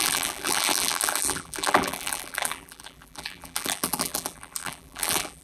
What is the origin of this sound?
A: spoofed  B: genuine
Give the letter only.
A